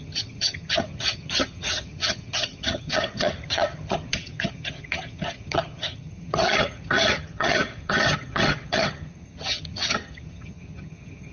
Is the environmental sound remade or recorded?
remade